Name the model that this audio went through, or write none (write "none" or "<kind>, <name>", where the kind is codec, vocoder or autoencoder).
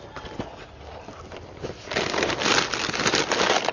none